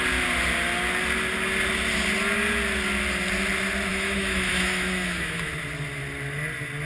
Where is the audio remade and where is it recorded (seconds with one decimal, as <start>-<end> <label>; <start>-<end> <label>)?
0.0-3.9 recorded; 3.9-5.5 remade; 5.5-6.8 recorded